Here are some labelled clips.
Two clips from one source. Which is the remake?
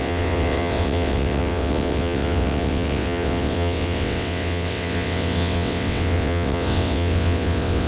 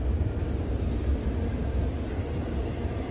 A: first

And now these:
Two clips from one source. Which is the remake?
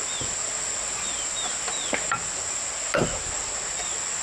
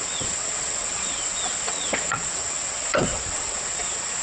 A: second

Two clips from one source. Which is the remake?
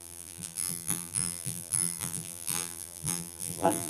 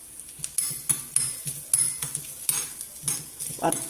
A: first